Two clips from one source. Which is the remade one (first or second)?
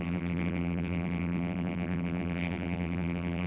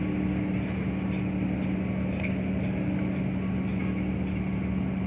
first